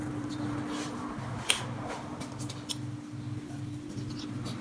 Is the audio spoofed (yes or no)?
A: no